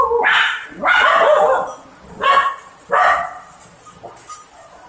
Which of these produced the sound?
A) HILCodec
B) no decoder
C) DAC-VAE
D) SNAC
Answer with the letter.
B